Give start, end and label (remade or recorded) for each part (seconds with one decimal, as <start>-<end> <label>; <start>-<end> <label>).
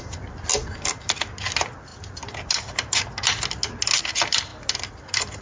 0.0-5.4 recorded